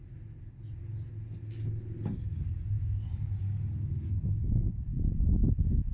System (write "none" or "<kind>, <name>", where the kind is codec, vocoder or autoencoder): none